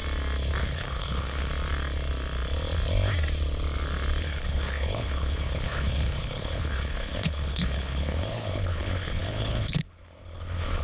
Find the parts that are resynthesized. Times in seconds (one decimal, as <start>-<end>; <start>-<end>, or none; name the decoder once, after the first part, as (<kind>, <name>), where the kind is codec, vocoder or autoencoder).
0.6-1.5 (codec, HILCodec); 4.2-10.8